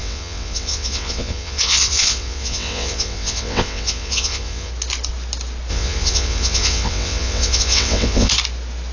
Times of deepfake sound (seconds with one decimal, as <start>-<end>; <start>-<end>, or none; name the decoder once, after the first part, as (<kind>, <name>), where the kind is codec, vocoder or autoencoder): 0.0-4.7 (vocoder, WaveNeXt); 5.7-8.3